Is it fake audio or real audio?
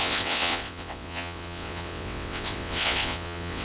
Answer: fake